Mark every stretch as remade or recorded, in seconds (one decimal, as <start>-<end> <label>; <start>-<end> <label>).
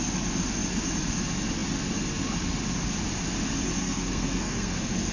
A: 0.0-3.8 recorded; 3.8-5.1 remade